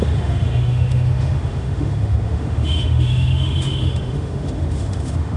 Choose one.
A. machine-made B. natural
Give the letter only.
A